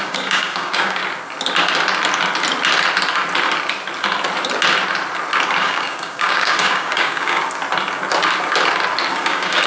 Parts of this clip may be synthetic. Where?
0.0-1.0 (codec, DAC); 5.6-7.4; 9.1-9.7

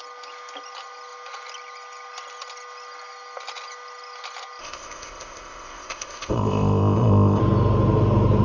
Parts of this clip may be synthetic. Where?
4.6-7.4 (codec, ZipCodec)